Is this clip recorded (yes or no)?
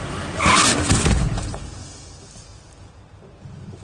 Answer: yes